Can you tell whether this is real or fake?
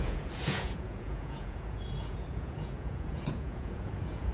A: fake